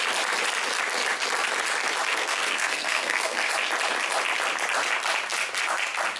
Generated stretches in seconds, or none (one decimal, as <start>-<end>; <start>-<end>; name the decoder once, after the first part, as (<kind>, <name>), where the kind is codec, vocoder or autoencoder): 2.1-3.5 (codec, SNAC)